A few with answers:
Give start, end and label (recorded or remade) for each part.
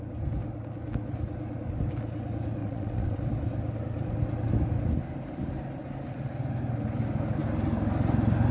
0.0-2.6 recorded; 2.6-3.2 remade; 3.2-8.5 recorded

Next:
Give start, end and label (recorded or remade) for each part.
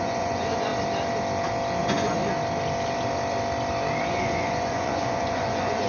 0.0-0.7 remade; 0.7-1.8 recorded; 1.8-2.2 remade; 2.2-4.0 recorded; 4.0-5.9 remade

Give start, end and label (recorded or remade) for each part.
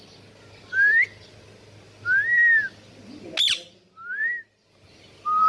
0.0-4.2 recorded; 4.2-5.5 remade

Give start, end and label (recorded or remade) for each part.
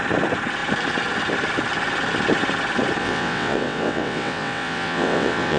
0.0-3.0 recorded; 3.0-5.6 remade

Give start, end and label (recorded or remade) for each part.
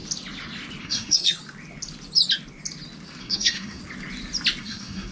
0.0-0.8 recorded; 0.8-1.4 remade; 1.4-3.2 recorded; 3.2-3.8 remade; 3.8-4.6 recorded; 4.6-5.1 remade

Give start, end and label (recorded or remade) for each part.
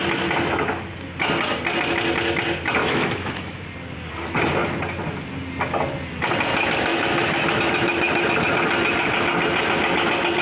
0.0-2.8 recorded; 2.8-3.6 remade; 3.6-6.9 recorded; 6.9-7.6 remade; 7.6-10.4 recorded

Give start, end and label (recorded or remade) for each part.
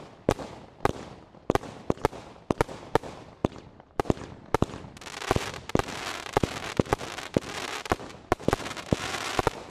0.0-9.7 recorded